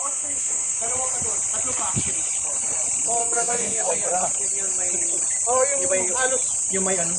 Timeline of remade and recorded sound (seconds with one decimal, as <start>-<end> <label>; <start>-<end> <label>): 0.0-0.8 remade; 0.8-3.2 recorded; 3.2-3.9 remade; 3.9-7.2 recorded